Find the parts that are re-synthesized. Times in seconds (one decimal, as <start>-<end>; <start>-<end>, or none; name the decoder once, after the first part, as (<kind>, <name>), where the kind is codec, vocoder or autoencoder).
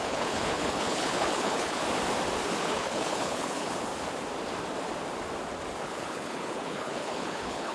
0.0-1.8 (codec, HILCodec); 2.6-3.9; 5.8-7.7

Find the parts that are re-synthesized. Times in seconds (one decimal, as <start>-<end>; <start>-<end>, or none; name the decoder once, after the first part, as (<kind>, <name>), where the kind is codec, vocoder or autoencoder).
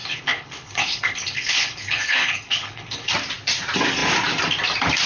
0.0-3.1 (codec, HILCodec)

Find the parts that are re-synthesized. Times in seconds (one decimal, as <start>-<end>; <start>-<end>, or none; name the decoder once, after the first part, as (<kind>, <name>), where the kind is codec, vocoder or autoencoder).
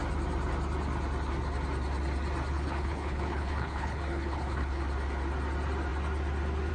2.5-4.8 (codec, HILCodec)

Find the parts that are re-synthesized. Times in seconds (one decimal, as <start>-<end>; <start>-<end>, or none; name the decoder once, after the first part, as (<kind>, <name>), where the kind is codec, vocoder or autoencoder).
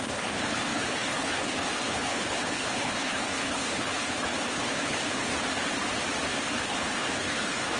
0.0-5.3 (codec, HILCodec); 6.6-7.8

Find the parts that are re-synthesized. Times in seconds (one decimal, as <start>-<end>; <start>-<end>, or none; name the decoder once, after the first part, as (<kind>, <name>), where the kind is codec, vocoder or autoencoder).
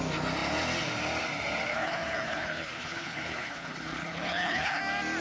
1.7-4.8 (codec, HILCodec)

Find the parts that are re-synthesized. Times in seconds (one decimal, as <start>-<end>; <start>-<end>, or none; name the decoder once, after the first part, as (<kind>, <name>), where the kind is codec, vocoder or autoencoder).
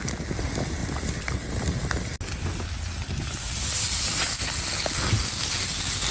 none